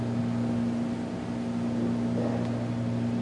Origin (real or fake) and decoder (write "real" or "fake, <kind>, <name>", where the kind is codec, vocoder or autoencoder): real